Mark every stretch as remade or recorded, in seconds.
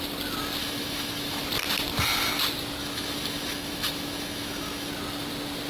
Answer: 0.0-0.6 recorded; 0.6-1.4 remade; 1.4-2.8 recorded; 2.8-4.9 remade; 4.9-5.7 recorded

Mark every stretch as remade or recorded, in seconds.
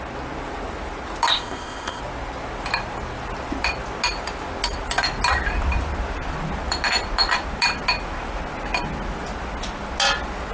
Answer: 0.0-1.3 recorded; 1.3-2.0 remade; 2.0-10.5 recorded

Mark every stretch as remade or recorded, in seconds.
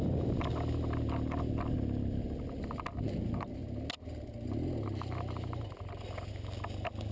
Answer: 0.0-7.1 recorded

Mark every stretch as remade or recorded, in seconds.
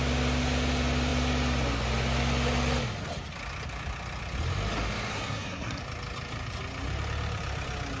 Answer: 0.0-5.1 recorded; 5.1-5.8 remade; 5.8-8.0 recorded